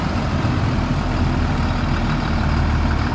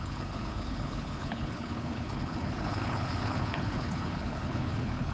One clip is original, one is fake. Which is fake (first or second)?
second